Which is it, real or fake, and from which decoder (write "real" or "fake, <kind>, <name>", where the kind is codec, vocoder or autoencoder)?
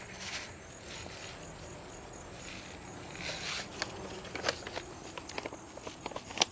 real